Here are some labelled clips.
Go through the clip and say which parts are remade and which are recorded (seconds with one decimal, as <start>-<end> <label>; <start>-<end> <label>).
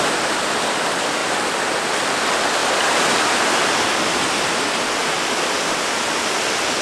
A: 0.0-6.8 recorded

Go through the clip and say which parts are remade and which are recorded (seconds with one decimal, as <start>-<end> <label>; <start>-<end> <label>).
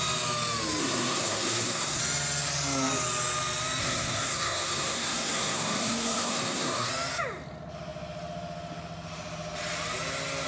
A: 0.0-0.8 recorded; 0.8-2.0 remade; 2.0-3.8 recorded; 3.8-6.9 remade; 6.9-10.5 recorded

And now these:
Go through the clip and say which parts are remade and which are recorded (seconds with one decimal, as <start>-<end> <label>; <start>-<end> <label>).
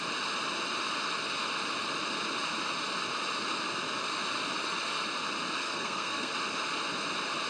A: 0.0-5.6 recorded; 5.6-6.3 remade; 6.3-7.5 recorded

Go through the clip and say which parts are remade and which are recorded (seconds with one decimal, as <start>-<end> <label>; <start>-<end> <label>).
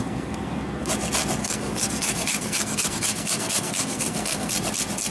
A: 0.0-0.9 remade; 0.9-1.4 recorded; 1.4-4.5 remade; 4.5-5.1 recorded